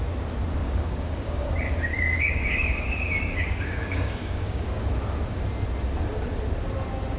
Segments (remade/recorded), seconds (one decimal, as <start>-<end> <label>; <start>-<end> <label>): 0.0-0.6 recorded; 0.6-1.5 remade; 1.5-1.9 recorded; 1.9-4.8 remade; 4.8-7.2 recorded